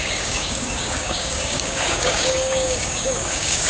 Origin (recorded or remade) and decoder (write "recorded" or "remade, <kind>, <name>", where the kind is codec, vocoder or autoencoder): remade, codec, DAC